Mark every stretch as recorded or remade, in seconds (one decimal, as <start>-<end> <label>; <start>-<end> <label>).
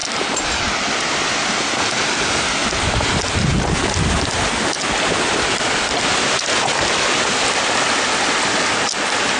0.0-9.4 recorded